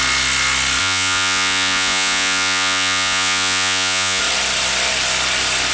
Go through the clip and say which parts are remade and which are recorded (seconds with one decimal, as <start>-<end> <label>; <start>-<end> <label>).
0.0-0.8 recorded; 0.8-4.2 remade; 4.2-5.7 recorded